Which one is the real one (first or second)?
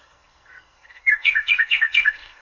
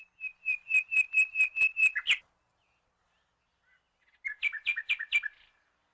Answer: second